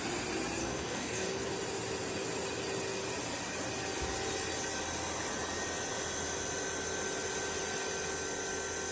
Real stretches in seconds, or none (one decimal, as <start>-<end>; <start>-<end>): 0.0-0.6; 1.4-8.9